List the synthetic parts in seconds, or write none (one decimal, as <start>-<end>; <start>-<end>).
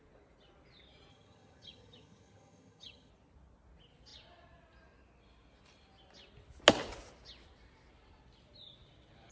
1.1-3.1